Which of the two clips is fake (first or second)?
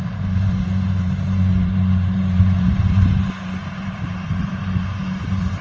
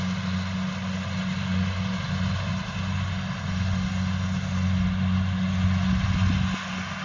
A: first